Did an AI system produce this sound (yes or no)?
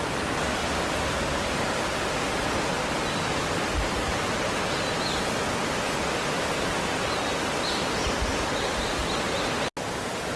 no